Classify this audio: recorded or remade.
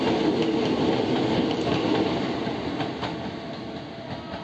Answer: recorded